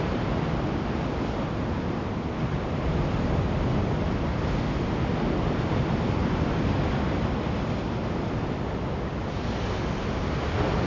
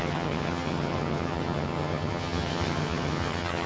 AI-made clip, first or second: second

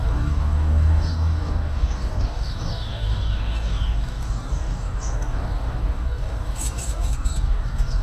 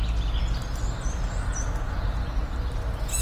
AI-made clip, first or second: first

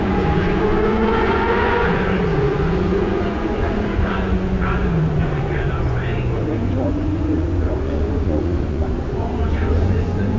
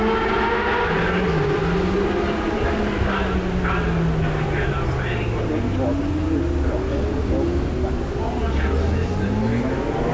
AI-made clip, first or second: first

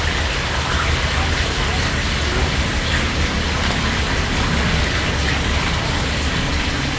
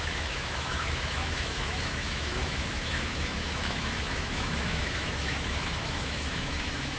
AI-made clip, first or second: second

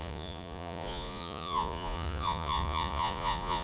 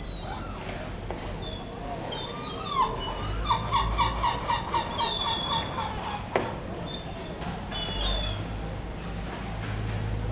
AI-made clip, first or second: first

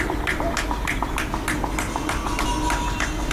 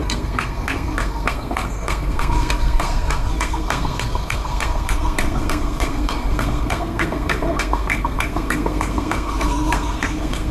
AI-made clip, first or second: second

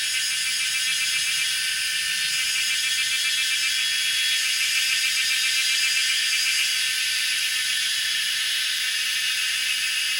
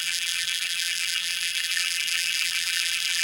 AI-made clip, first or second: second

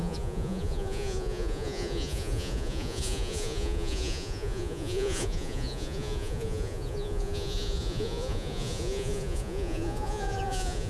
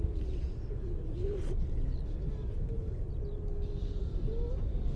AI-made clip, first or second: first